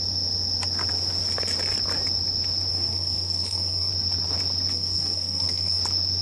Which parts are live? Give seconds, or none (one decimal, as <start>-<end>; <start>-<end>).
0.0-2.7; 3.9-4.7; 5.8-6.2